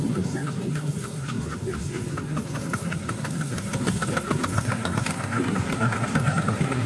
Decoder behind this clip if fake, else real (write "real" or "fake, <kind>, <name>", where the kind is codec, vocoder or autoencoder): fake, codec, SNAC